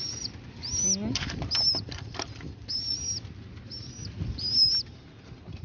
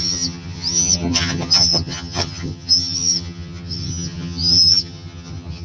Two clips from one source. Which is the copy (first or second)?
second